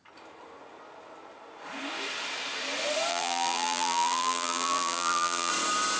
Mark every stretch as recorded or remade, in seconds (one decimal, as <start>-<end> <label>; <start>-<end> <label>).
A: 0.0-3.1 recorded; 3.1-5.5 remade; 5.5-6.0 recorded